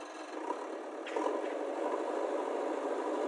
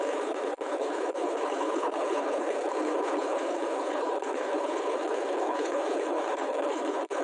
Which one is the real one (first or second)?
first